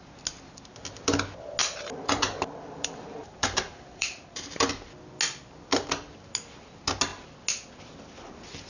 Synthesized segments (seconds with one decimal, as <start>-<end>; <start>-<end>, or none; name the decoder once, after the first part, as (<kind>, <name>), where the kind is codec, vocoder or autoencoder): 1.6-4.7 (vocoder, BigVGAN v2)